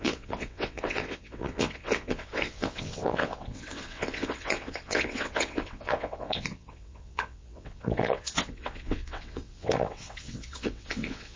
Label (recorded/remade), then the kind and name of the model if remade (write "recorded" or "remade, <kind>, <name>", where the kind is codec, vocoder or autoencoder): remade, vocoder, WaveNeXt